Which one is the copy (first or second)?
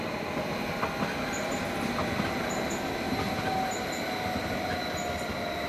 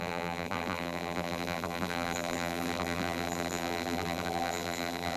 second